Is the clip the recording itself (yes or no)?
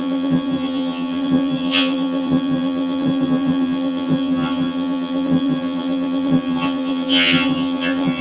no